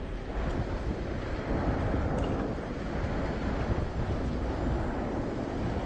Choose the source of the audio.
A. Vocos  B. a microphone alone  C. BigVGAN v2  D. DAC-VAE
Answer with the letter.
B